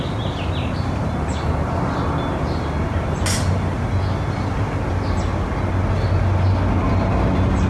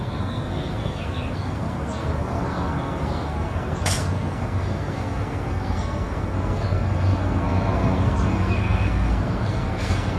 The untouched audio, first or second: first